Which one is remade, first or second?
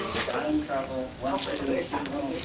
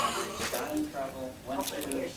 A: first